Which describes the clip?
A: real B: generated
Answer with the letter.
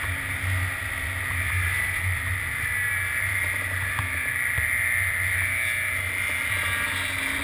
A